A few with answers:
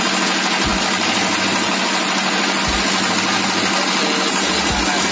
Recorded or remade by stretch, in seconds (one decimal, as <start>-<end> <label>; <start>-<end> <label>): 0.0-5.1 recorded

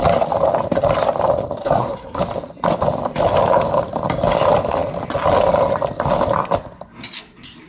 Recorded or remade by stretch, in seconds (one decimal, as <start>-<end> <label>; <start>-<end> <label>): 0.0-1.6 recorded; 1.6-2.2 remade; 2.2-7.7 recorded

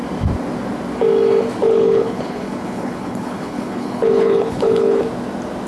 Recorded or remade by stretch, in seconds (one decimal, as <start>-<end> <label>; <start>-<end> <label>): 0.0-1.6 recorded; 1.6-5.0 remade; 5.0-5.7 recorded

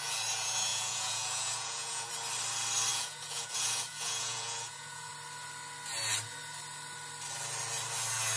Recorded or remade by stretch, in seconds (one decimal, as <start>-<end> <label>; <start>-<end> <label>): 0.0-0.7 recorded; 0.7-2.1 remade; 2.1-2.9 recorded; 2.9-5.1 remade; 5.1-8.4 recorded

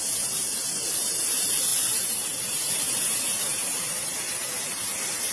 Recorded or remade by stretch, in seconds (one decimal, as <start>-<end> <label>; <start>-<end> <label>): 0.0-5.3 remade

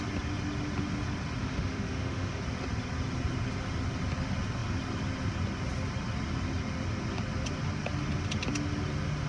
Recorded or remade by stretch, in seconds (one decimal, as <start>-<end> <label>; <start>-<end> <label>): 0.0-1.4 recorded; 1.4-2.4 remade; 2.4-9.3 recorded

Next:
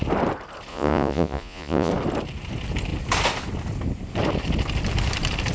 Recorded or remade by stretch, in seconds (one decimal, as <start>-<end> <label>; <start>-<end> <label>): 0.0-0.7 recorded; 0.7-1.9 remade; 1.9-5.5 recorded